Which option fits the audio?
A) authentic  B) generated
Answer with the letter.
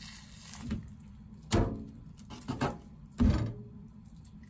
A